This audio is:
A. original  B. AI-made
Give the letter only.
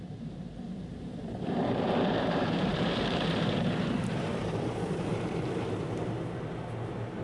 B